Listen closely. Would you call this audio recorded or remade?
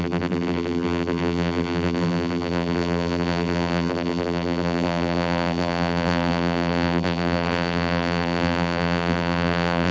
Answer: remade